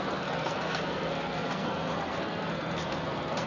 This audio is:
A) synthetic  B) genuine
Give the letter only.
A